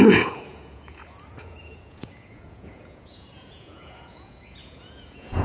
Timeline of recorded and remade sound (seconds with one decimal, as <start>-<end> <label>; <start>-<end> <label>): 0.0-5.4 remade